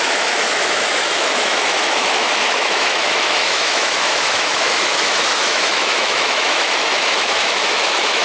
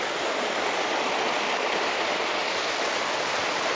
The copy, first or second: first